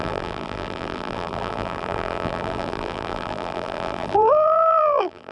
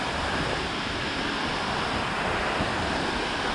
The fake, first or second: first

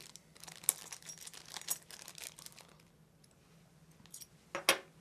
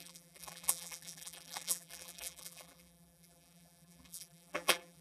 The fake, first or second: second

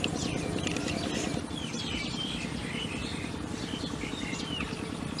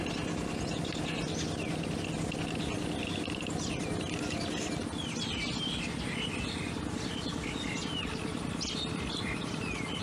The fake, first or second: first